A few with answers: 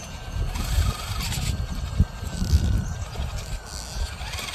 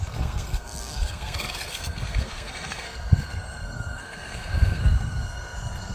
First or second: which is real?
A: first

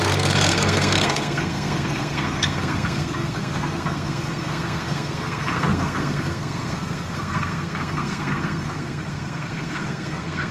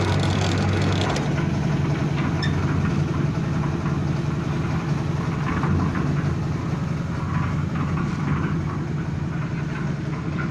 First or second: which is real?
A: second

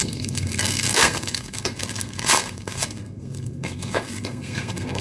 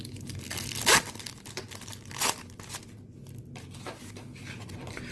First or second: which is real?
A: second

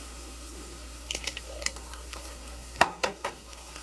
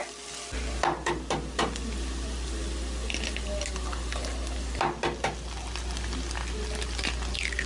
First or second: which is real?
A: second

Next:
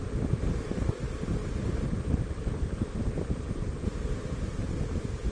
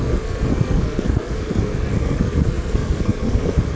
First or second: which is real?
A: first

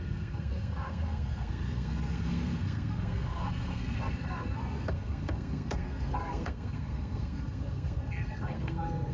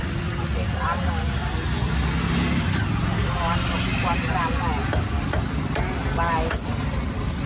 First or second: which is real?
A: second